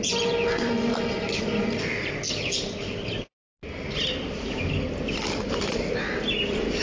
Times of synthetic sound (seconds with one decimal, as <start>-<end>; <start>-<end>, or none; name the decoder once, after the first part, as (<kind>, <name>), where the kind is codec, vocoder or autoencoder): none